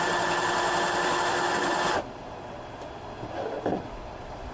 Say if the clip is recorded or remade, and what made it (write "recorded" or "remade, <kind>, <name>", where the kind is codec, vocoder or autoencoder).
recorded